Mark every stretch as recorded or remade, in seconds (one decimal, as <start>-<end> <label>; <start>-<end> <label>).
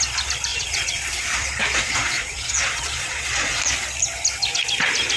0.0-0.5 recorded; 0.5-3.6 remade; 3.6-5.2 recorded